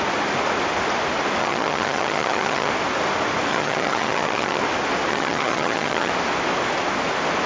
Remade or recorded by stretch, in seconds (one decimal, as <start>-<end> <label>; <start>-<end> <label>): 0.0-1.4 recorded; 1.4-2.7 remade; 2.7-3.5 recorded; 3.5-4.6 remade; 4.6-5.1 recorded; 5.1-6.1 remade; 6.1-7.5 recorded